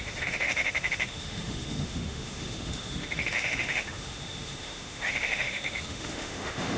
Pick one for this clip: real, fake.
fake